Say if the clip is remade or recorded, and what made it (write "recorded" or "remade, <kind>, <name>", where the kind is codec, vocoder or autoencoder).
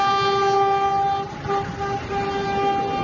recorded